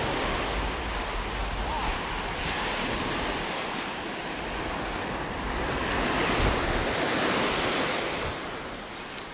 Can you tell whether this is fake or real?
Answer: real